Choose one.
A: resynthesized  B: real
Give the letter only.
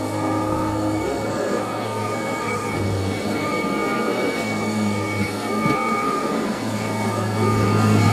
A